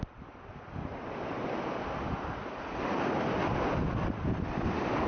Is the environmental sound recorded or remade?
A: recorded